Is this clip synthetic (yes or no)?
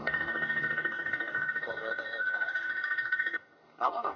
yes